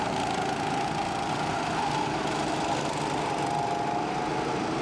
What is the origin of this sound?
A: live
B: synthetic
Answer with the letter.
A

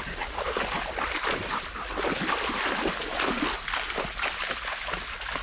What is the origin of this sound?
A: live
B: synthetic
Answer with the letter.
A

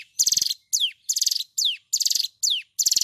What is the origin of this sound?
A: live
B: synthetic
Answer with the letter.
A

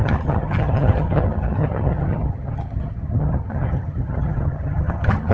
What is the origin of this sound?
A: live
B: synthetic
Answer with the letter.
B